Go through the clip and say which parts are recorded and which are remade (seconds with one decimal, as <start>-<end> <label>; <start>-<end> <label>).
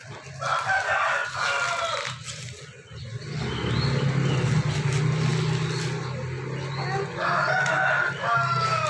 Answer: 0.0-8.9 recorded